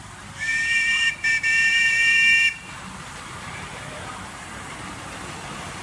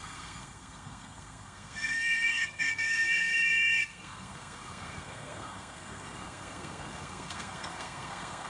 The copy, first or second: second